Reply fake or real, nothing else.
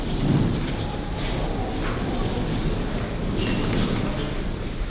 real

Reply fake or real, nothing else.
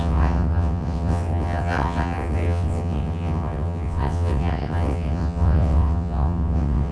fake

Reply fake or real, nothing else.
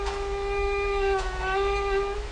fake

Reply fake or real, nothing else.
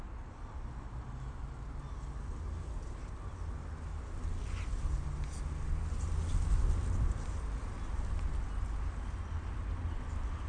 real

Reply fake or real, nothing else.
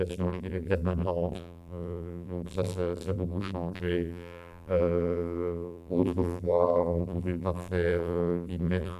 fake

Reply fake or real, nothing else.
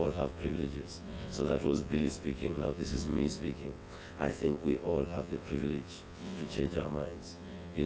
fake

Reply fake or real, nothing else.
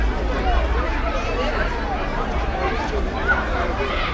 real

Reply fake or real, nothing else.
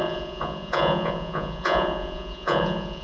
fake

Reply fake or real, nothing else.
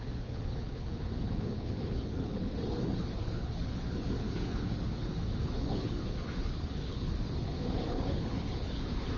fake